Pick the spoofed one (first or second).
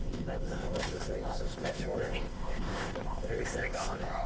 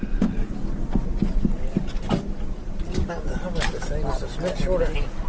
first